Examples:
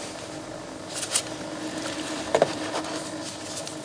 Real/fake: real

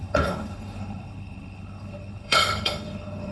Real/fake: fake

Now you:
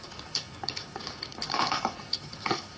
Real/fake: fake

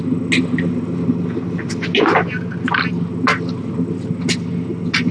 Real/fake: real